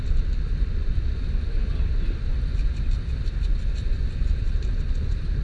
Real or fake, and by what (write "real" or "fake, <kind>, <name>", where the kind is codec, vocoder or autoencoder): fake, vocoder, BigVGAN v2